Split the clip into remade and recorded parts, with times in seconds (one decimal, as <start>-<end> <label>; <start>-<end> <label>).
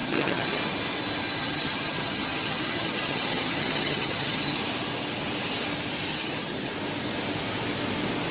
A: 0.0-0.6 remade; 0.6-1.4 recorded; 1.4-4.6 remade; 4.6-6.1 recorded; 6.1-6.7 remade; 6.7-8.3 recorded